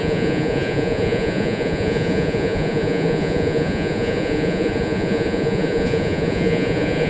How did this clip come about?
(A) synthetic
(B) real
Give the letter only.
A